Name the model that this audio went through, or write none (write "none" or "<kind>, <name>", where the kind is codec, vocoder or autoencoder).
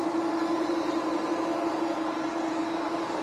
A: vocoder, BigVGAN v2